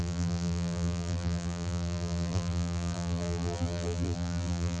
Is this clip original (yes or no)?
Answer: no